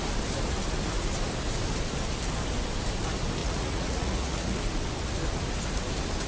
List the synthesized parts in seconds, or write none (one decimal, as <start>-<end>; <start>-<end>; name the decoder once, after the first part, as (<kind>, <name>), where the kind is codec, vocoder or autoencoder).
3.4-4.6 (vocoder, Vocos)